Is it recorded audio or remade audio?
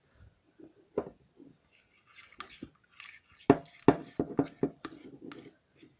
recorded